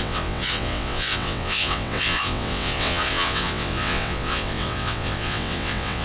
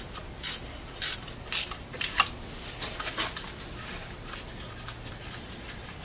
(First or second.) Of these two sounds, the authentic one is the second